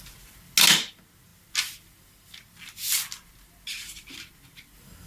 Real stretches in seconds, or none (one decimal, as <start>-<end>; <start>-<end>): 0.0-5.1

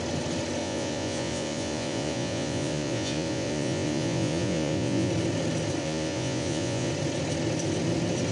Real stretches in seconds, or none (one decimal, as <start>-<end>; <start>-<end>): 0.0-0.6; 5.1-5.8; 6.9-8.3

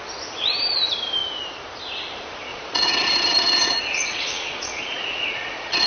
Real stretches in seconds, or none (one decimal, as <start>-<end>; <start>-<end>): 0.0-2.5